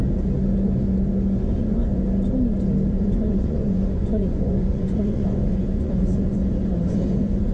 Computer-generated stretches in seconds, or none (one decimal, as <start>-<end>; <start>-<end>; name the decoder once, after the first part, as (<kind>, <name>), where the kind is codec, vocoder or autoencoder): 1.4-2.0 (vocoder, Vocos); 2.9-6.4; 6.9-7.5